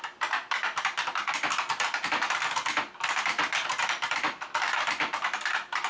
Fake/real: real